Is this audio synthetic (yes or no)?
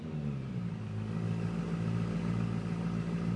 no